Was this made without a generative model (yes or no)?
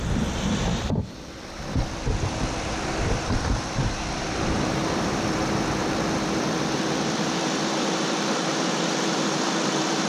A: no